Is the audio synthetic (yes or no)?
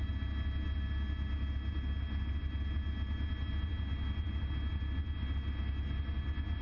no